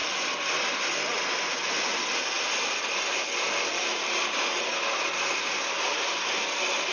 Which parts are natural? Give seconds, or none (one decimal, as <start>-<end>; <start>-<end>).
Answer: 0.0-6.9